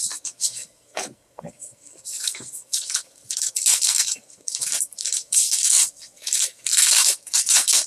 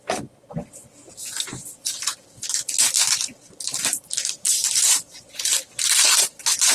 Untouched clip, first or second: second